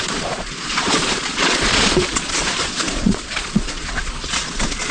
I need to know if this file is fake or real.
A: fake